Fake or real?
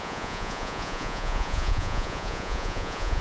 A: fake